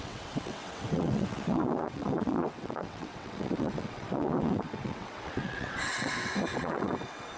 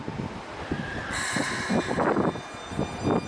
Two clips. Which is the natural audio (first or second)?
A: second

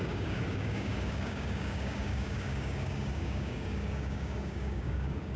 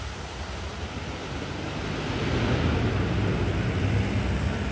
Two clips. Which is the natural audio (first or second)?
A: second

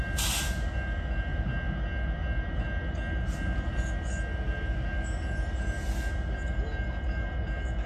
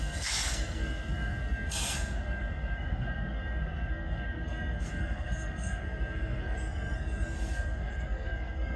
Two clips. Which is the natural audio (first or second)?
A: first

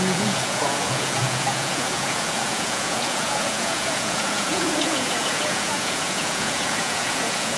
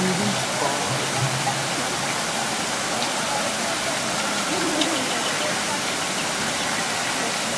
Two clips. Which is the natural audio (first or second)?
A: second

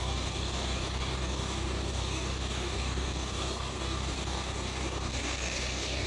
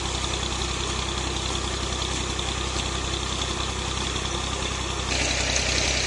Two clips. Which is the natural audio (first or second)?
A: second